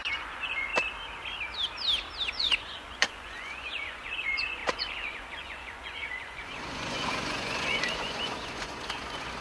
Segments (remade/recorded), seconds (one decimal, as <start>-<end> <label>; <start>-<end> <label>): 0.0-0.7 remade; 0.7-2.3 recorded; 2.3-9.4 remade

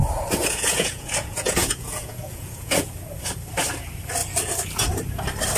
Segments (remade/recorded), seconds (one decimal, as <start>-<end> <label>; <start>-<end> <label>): 0.0-0.4 recorded; 0.4-2.9 remade; 2.9-5.6 recorded

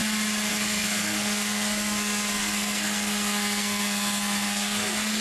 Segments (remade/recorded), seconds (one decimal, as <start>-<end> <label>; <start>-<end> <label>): 0.0-0.5 recorded; 0.5-5.2 remade